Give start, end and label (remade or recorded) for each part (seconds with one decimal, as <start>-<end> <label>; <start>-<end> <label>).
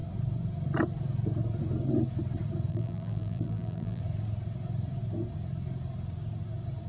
0.0-2.7 recorded; 2.7-4.0 remade; 4.0-6.9 recorded